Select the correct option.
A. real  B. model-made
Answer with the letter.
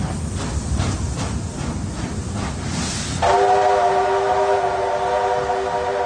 A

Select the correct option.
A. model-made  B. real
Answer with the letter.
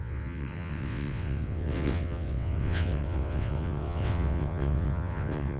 A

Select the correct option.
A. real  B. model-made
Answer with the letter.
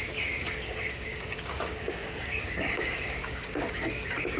B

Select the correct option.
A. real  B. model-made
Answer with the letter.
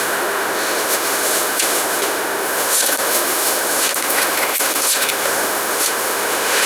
B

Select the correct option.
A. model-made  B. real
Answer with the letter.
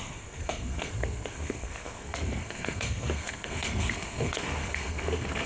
A